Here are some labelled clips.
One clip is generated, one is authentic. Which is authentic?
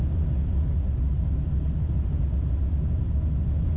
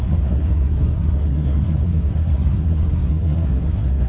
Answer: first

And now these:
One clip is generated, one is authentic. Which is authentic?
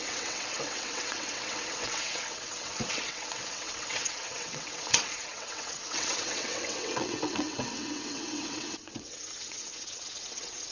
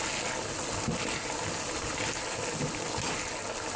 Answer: second